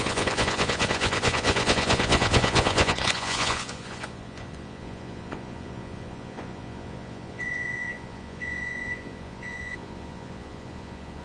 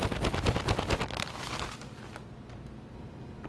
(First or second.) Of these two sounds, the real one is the second